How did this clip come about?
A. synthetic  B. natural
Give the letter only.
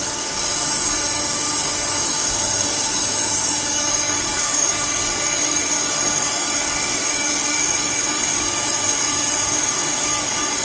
A